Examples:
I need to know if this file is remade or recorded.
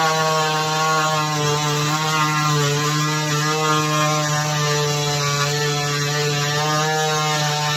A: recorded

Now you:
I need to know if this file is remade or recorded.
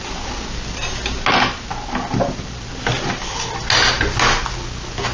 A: recorded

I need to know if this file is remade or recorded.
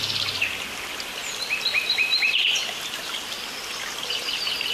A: recorded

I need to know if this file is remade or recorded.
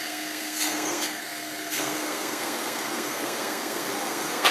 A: remade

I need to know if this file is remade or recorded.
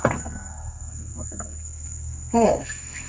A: remade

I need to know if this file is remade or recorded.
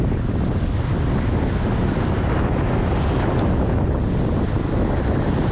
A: recorded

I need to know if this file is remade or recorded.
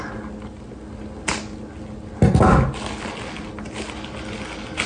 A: recorded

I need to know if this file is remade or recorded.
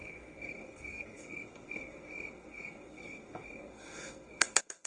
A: remade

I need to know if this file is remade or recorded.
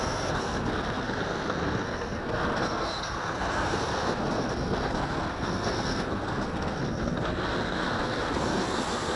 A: remade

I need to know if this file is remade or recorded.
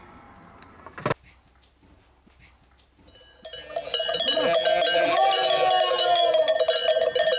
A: recorded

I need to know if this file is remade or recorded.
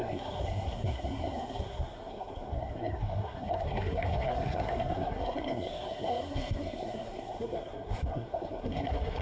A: remade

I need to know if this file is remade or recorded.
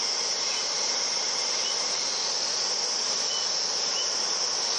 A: recorded